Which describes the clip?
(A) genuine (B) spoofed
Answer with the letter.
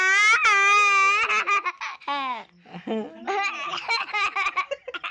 A